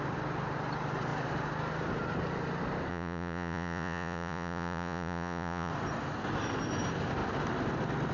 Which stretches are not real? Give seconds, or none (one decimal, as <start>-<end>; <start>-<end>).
2.9-5.7